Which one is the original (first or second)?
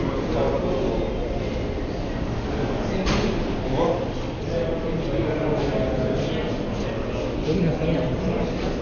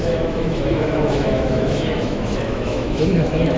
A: first